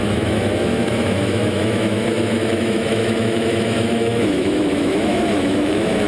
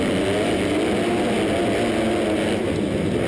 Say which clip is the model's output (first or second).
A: first